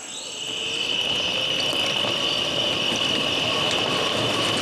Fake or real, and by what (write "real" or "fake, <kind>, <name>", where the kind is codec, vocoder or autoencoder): real